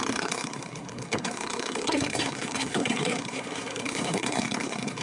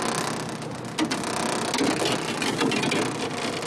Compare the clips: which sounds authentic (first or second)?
second